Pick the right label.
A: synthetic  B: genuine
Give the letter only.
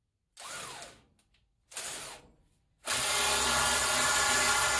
B